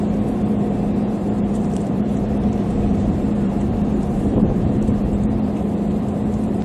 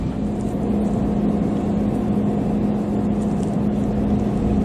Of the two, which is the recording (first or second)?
second